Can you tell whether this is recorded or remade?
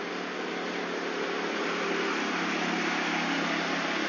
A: recorded